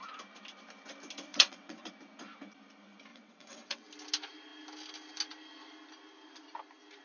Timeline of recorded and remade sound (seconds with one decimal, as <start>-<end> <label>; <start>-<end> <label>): 0.0-1.3 recorded; 1.3-1.9 remade; 1.9-3.1 recorded; 3.1-3.9 remade; 3.9-7.0 recorded